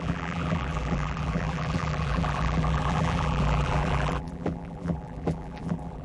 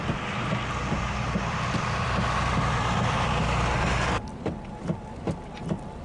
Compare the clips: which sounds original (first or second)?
second